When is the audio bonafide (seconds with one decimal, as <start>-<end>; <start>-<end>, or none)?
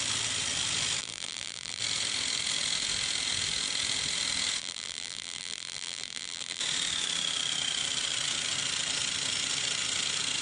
0.0-1.0; 1.8-4.6; 6.6-10.4